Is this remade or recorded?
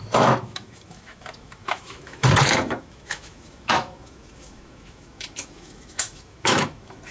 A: remade